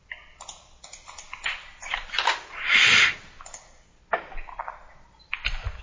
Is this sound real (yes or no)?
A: yes